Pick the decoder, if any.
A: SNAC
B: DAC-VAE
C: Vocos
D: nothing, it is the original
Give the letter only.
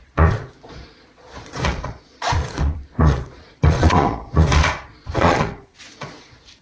C